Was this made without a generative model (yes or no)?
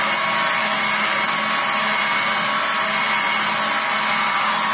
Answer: yes